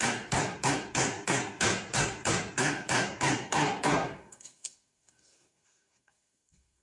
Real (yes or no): no